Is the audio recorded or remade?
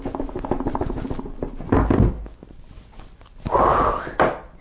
recorded